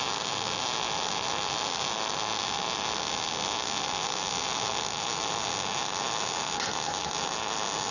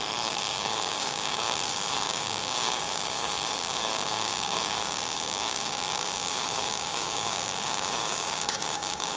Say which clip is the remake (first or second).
second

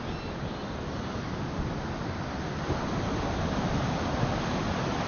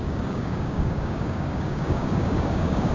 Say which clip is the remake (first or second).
second